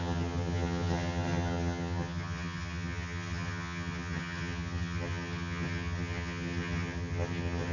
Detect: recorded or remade remade